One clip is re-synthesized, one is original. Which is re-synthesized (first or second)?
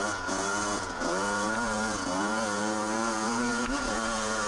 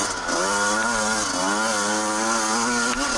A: first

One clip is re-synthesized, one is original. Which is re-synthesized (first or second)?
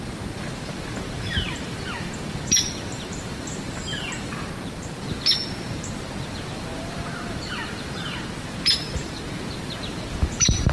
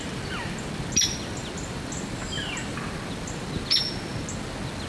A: first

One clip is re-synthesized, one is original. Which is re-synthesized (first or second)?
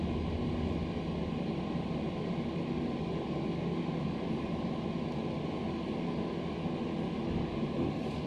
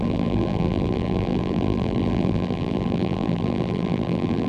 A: second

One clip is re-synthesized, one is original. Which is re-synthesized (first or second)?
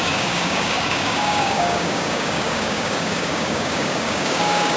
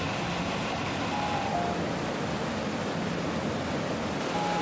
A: first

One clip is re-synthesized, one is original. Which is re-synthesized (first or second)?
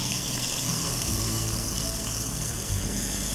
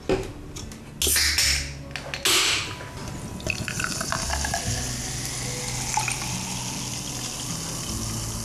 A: first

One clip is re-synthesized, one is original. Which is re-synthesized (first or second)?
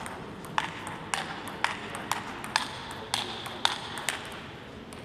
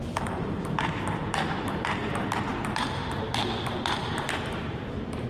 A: second